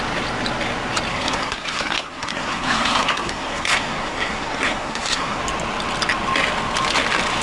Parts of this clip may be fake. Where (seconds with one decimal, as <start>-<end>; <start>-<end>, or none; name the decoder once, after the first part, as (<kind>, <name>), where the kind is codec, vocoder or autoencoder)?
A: 1.1-5.4 (codec, SNAC)